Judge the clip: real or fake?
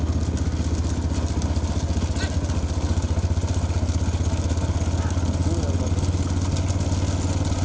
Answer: real